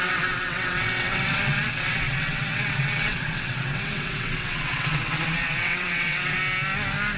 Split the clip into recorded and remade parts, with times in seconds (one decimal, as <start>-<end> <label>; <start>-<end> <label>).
0.0-6.4 remade; 6.4-7.2 recorded